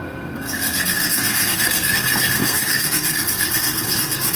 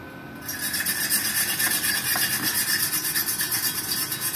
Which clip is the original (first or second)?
second